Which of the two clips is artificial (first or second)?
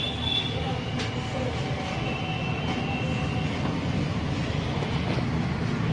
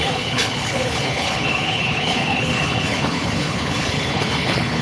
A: second